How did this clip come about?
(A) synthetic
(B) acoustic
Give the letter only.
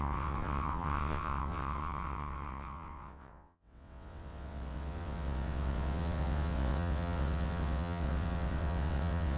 A